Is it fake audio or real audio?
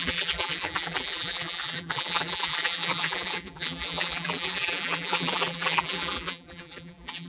fake